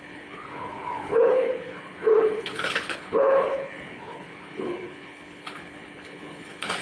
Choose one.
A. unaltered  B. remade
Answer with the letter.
B